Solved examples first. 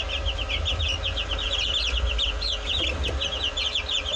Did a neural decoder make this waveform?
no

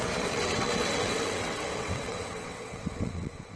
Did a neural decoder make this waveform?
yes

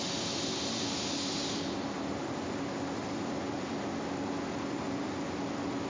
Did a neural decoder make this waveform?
no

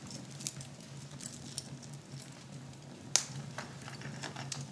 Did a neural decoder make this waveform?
no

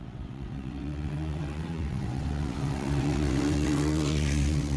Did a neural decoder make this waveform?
yes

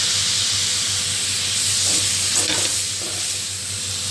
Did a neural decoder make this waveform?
no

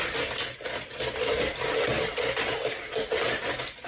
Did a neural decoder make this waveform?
no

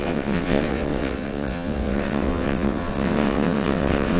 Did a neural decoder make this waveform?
yes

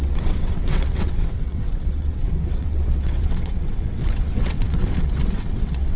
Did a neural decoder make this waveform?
yes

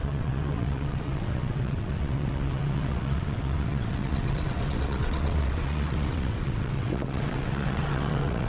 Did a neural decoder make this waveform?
yes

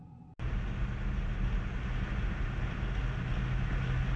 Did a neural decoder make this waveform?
no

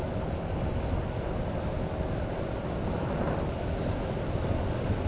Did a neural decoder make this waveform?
no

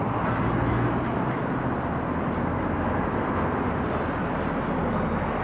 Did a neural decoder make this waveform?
no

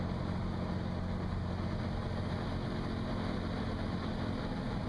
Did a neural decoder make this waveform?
no